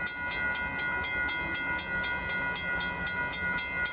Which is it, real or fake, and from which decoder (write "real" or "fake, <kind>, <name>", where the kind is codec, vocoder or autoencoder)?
real